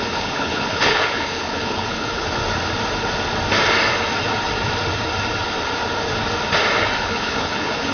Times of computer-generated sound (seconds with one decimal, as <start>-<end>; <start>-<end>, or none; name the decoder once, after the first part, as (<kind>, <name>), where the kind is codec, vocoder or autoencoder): 0.0-2.4 (codec, HILCodec); 7.0-7.9